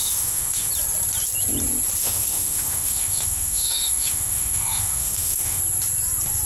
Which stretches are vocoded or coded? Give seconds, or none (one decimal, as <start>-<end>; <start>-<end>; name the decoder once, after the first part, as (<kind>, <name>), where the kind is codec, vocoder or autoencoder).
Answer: 0.0-0.7 (autoencoder, DAC-VAE); 2.0-5.6